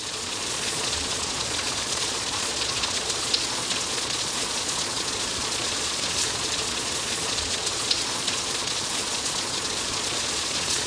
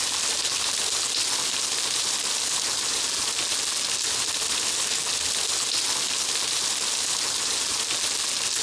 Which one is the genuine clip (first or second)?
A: second